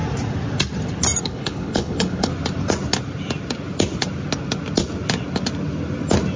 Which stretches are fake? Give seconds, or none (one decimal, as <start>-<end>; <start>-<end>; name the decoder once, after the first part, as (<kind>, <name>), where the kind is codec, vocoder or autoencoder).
1.2-2.3 (codec, HILCodec)